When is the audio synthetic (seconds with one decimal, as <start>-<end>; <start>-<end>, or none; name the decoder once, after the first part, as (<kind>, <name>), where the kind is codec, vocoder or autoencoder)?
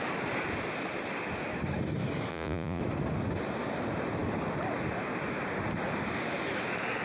2.3-2.8 (vocoder, Vocos)